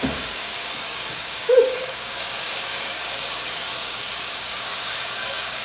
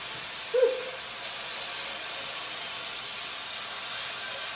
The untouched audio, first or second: second